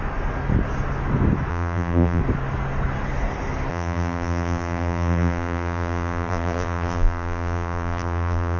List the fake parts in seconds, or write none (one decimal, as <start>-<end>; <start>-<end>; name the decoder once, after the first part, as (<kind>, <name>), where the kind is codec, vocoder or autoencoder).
1.5-2.2 (vocoder, BigVGAN v2); 3.7-8.6